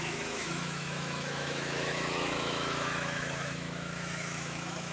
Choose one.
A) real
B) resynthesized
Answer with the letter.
B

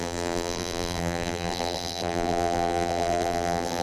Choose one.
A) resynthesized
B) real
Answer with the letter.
A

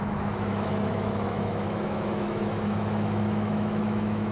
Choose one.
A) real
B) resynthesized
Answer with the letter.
B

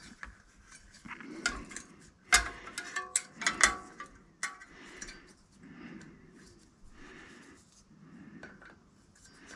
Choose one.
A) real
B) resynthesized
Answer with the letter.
A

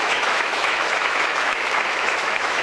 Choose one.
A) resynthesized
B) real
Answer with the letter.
A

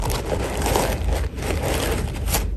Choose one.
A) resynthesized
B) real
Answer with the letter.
B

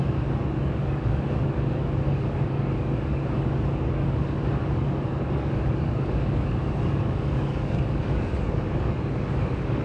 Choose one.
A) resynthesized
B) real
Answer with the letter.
A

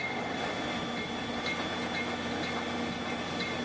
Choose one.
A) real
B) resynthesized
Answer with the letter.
A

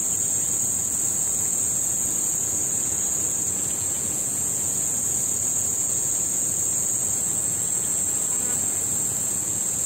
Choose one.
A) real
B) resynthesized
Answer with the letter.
B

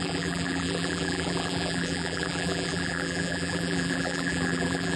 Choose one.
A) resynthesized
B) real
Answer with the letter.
A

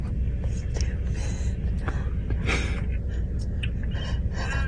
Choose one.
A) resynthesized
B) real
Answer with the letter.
B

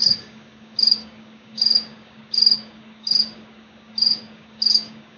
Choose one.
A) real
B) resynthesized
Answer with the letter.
B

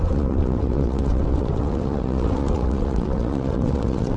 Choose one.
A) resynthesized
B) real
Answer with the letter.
A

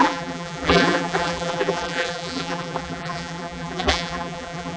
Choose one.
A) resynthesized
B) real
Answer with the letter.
A